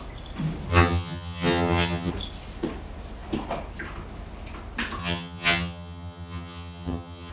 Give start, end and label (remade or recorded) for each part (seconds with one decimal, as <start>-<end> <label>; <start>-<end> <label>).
0.0-0.7 recorded; 0.7-2.1 remade; 2.1-5.0 recorded; 5.0-7.3 remade